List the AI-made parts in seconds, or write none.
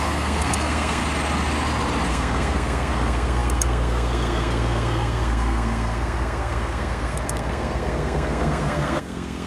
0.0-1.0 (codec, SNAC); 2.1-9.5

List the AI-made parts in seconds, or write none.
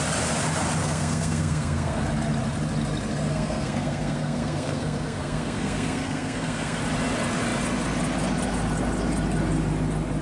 0.8-2.0 (codec, SNAC); 3.3-6.8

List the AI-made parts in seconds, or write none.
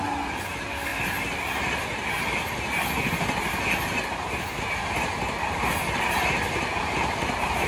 none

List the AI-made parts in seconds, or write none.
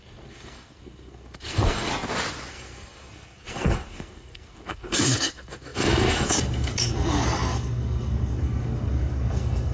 0.0-1.9 (codec, SNAC); 2.5-9.7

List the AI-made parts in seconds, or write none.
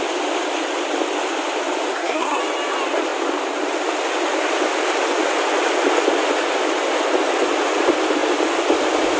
1.9-2.4 (codec, SNAC)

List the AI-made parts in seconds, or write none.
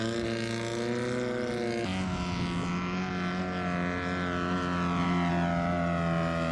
none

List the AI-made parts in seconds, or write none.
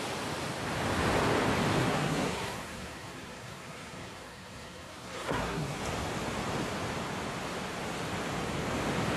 1.8-5.8 (codec, SNAC)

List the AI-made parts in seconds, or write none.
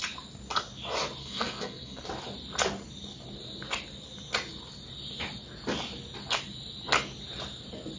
1.2-2.0 (codec, SNAC)